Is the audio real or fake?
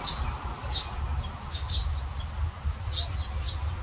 real